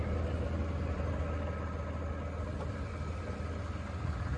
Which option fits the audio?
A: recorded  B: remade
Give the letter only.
A